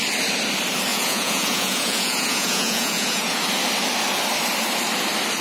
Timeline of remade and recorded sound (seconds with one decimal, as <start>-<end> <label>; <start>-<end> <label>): 0.0-0.9 recorded; 0.9-3.4 remade; 3.4-5.4 recorded

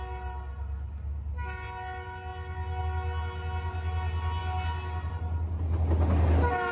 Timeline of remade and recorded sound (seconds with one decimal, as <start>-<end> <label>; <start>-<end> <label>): 0.0-6.7 recorded

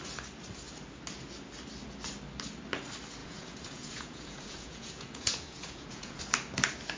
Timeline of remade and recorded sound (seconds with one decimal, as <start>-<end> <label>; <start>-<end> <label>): 0.0-3.2 recorded; 3.2-6.2 remade; 6.2-7.0 recorded

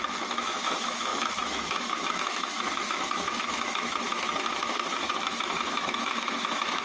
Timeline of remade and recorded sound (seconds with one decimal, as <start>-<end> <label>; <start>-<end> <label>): 0.0-6.8 remade

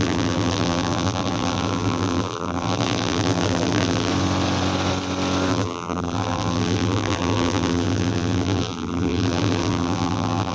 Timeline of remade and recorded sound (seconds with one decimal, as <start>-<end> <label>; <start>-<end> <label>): 0.0-4.1 remade; 4.1-5.5 recorded; 5.5-10.5 remade

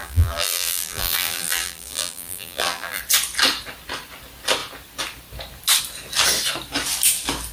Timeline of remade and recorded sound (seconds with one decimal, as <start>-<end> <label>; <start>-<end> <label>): 0.0-3.0 remade; 3.0-7.5 recorded

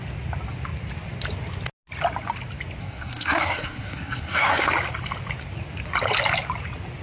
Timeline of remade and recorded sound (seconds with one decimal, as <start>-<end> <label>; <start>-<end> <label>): 0.0-2.8 recorded; 2.8-4.7 remade; 4.7-7.0 recorded